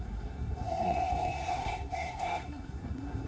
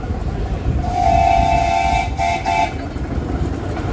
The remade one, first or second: first